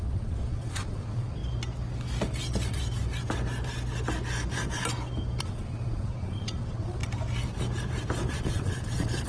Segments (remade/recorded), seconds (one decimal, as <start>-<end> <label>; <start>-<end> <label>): 0.0-1.4 remade; 1.4-5.4 recorded; 5.4-7.0 remade; 7.0-8.3 recorded; 8.3-9.3 remade